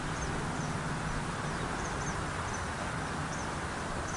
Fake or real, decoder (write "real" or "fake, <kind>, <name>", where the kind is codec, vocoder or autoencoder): real